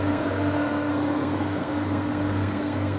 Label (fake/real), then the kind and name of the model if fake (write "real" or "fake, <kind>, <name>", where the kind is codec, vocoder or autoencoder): fake, codec, SNAC